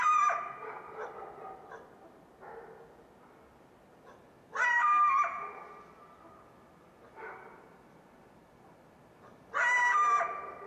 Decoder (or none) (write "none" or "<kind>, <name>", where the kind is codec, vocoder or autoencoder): none